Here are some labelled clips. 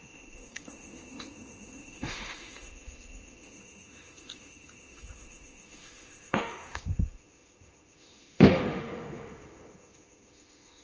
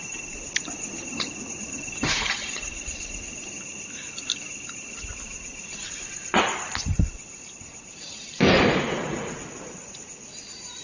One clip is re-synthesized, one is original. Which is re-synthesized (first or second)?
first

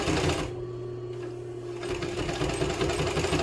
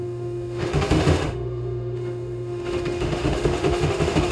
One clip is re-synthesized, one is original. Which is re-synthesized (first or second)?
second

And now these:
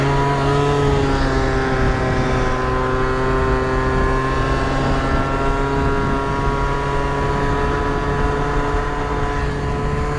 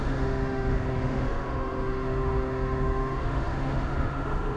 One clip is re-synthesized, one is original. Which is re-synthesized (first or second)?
second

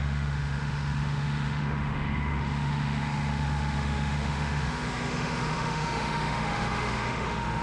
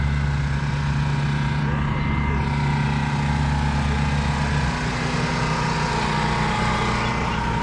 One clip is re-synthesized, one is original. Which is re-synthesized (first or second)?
first